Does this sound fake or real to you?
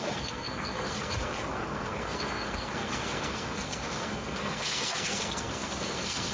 fake